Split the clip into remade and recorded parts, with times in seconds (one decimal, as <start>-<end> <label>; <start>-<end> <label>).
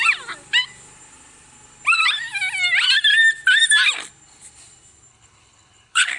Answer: 0.0-5.1 recorded; 5.1-6.2 remade